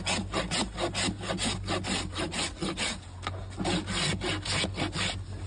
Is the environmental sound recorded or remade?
recorded